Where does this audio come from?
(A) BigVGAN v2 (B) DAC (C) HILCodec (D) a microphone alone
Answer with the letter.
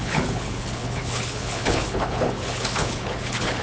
C